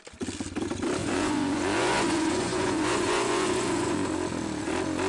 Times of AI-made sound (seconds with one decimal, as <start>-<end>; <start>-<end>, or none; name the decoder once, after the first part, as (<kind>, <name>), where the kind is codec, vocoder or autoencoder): 1.0-4.1 (vocoder, Vocos)